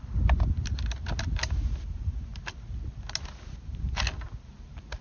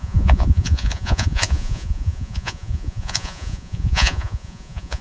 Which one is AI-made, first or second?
second